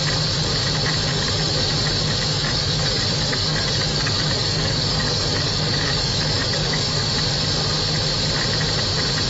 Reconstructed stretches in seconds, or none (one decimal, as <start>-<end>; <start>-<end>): 1.1-1.7; 2.3-7.1